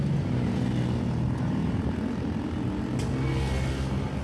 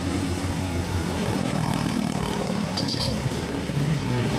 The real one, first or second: first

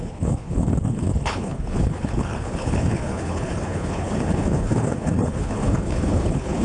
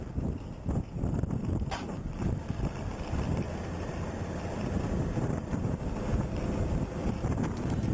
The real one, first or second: second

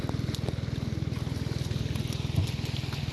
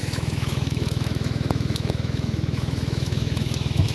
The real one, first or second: first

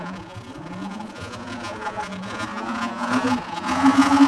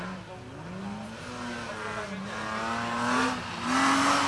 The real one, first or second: second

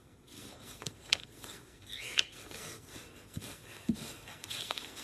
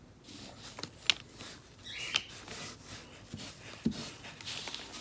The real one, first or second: second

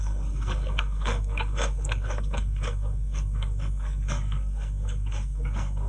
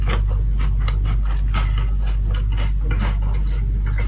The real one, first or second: second